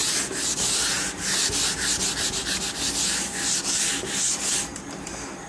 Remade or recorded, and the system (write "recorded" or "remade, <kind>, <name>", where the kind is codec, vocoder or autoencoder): recorded